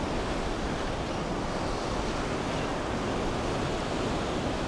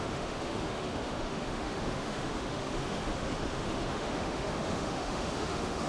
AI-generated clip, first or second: second